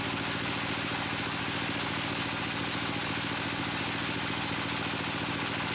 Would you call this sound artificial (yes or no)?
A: no